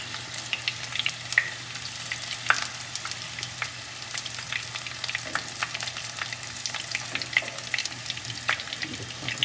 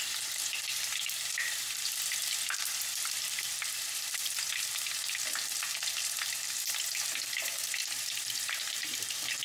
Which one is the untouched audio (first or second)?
first